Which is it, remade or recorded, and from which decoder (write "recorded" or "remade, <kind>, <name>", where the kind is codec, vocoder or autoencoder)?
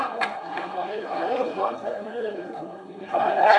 remade, codec, SNAC